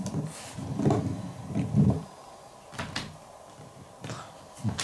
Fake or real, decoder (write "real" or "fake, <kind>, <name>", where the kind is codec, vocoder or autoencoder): real